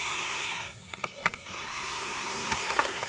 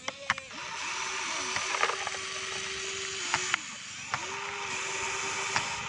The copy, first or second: first